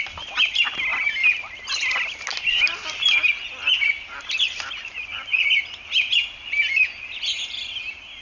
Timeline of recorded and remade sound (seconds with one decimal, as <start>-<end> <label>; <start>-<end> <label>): 0.0-4.8 recorded; 4.8-5.5 remade; 5.5-8.2 recorded